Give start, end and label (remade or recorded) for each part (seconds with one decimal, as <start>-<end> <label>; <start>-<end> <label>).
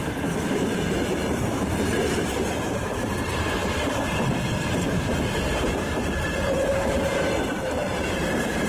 0.0-8.7 remade